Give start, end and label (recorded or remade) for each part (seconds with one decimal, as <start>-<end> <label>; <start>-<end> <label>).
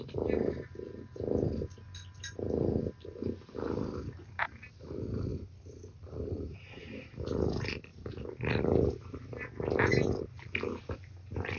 0.0-11.6 remade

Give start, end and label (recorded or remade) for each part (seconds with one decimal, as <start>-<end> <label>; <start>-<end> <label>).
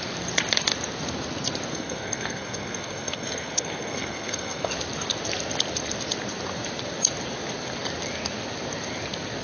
0.0-1.7 recorded; 1.7-4.7 remade; 4.7-9.4 recorded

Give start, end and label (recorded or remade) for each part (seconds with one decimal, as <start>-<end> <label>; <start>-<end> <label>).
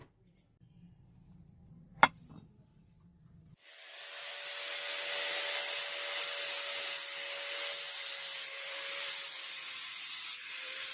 0.0-2.3 remade; 2.3-8.3 recorded; 8.3-10.9 remade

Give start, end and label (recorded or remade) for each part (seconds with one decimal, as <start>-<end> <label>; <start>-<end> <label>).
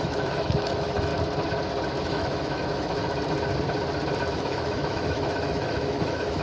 0.0-1.1 remade; 1.1-2.0 recorded; 2.0-3.0 remade; 3.0-4.3 recorded; 4.3-6.4 remade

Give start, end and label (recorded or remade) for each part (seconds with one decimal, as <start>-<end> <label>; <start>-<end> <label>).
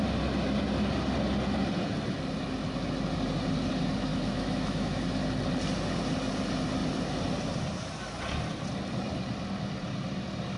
0.0-4.1 recorded; 4.1-5.0 remade; 5.0-10.6 recorded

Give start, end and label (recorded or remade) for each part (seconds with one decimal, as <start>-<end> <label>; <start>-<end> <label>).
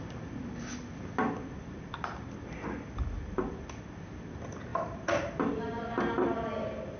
0.0-7.0 recorded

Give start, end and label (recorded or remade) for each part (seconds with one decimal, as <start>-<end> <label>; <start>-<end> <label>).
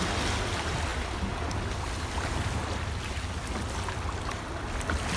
0.0-5.2 recorded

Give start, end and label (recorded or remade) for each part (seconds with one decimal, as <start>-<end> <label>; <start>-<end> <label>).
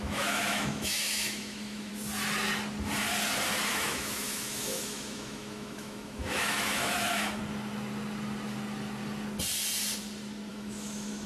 0.0-1.9 remade; 1.9-3.7 recorded; 3.7-7.4 remade; 7.4-10.5 recorded; 10.5-11.3 remade